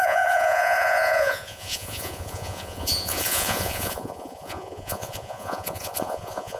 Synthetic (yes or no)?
yes